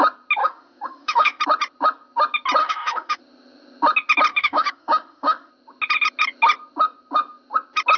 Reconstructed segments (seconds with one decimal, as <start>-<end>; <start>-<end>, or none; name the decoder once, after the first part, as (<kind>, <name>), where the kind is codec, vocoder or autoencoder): 0.4-1.4 (autoencoder, DAC-VAE); 2.6-3.2; 4.3-5.5

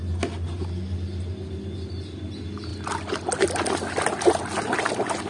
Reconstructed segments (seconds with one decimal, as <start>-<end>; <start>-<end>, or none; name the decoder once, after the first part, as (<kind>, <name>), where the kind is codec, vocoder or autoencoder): none

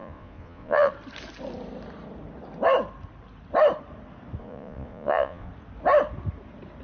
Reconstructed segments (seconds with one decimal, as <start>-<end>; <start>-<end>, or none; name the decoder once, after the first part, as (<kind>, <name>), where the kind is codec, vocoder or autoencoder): 0.0-0.9 (vocoder, Vocos); 4.4-5.5

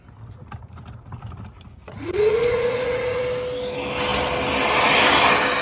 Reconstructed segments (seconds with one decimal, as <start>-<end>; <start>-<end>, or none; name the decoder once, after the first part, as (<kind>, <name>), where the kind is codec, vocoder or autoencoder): 1.8-3.2 (vocoder, Vocos)

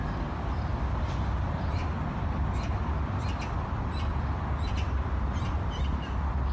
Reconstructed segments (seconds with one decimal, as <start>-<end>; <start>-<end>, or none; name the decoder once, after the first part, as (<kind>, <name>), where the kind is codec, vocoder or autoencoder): none